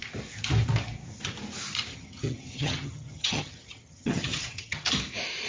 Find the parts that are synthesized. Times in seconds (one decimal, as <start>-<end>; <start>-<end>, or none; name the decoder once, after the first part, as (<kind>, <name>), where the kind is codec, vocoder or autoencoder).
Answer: 1.9-4.9 (vocoder, HiFi-GAN)